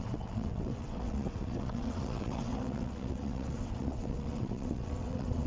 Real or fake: fake